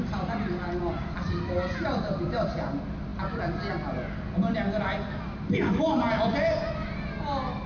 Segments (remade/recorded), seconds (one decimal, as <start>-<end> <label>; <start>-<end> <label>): 0.0-7.7 recorded